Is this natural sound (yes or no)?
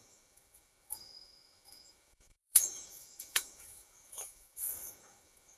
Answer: no